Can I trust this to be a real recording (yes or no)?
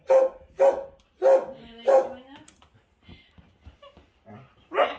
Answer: yes